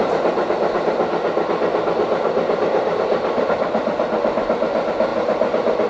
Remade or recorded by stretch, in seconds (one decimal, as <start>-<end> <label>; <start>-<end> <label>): 0.0-5.9 recorded